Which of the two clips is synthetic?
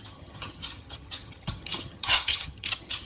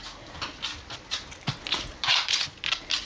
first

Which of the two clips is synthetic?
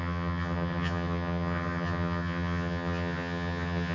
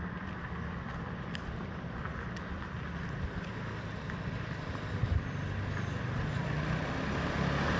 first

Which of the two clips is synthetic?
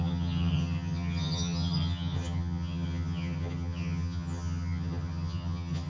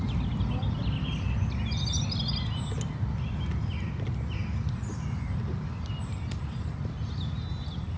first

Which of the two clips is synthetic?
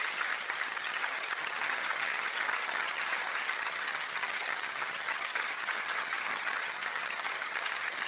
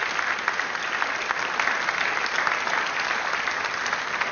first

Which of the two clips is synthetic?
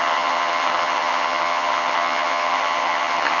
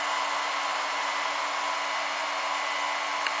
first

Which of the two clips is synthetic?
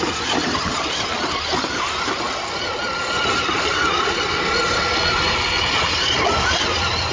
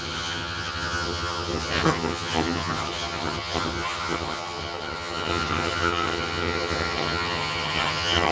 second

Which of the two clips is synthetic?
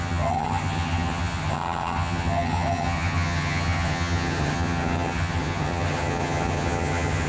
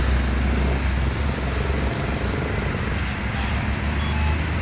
first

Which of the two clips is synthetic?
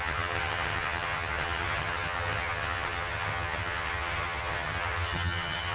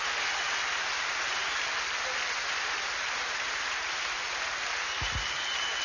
first